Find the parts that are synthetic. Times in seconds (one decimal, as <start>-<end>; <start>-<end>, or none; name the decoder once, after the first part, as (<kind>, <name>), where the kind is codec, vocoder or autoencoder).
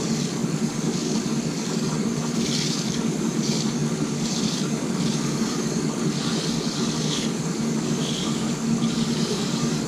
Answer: 0.0-9.9 (codec, DAC)